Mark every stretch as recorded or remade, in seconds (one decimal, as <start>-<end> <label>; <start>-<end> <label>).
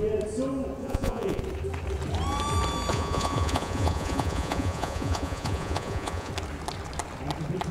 0.0-0.8 recorded; 0.8-1.4 remade; 1.4-2.9 recorded; 2.9-6.3 remade; 6.3-7.7 recorded